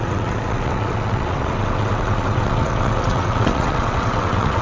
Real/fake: fake